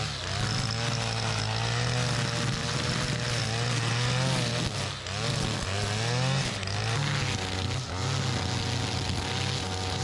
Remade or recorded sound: recorded